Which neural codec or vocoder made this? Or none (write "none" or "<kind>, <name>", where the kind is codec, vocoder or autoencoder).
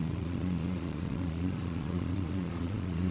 vocoder, Vocos